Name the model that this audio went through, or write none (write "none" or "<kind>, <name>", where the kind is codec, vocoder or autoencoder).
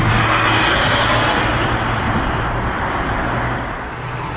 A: none